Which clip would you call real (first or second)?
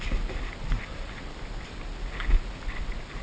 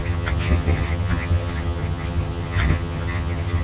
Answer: first